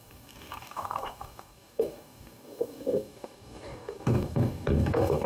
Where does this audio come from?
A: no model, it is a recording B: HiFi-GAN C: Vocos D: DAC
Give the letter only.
D